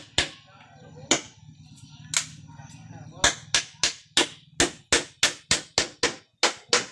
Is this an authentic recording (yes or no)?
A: yes